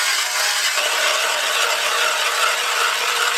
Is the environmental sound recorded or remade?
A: recorded